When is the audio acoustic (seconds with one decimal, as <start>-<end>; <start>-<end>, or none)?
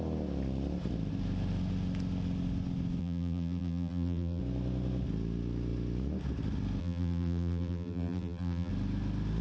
0.0-3.0; 4.4-6.8; 8.7-9.4